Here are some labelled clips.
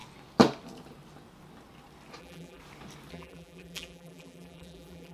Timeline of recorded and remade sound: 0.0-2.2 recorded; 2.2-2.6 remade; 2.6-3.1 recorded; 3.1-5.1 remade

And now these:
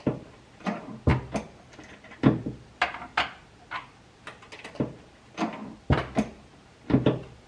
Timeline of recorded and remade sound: 0.0-1.1 remade; 1.1-2.4 recorded; 2.4-7.5 remade